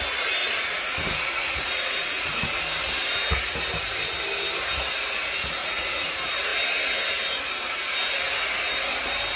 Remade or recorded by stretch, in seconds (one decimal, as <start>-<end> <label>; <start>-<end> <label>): 0.0-0.4 recorded; 0.4-2.6 remade; 2.6-5.6 recorded; 5.6-6.1 remade; 6.1-9.4 recorded